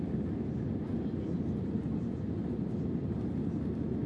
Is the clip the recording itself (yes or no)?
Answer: yes